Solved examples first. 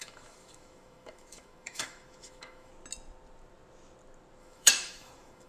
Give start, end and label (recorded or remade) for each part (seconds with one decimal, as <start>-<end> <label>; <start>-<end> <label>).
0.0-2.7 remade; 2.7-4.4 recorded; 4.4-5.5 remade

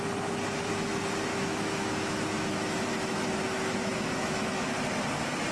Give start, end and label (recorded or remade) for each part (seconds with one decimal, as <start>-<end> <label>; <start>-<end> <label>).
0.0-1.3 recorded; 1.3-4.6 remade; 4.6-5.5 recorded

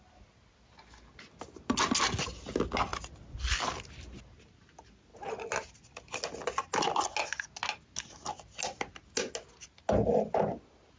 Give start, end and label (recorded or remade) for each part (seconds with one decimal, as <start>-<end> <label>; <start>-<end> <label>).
0.0-2.9 recorded; 2.9-3.7 remade; 3.7-11.0 recorded

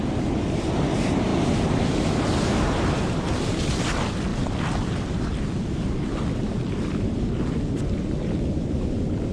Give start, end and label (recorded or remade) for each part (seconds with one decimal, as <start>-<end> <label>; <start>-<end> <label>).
0.0-9.3 recorded

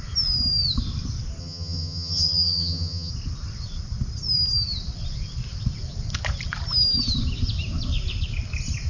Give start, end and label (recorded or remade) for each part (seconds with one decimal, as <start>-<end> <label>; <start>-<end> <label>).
0.0-1.4 recorded; 1.4-3.1 remade; 3.1-8.9 recorded

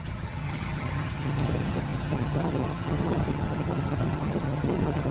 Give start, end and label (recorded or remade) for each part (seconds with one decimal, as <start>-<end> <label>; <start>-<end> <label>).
0.0-5.1 remade

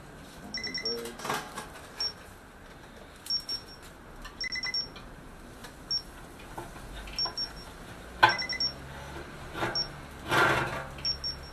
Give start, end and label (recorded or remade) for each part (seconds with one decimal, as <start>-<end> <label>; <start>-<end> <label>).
0.0-11.5 recorded